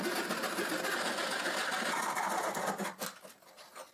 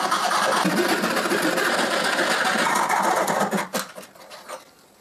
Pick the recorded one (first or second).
first